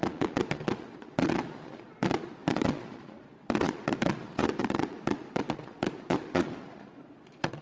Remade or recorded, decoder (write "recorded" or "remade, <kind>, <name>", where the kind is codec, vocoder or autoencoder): remade, vocoder, Vocos